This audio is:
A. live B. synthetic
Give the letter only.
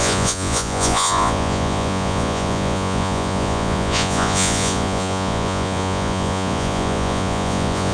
B